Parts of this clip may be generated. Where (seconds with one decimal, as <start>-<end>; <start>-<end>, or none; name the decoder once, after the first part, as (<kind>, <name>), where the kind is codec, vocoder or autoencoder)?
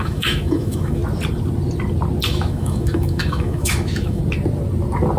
0.0-1.0 (autoencoder, DAC-VAE); 2.3-4.2